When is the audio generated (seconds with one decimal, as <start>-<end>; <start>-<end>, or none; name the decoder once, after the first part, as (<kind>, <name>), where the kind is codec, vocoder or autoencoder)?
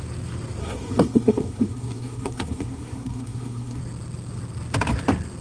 0.6-3.8 (codec, SNAC)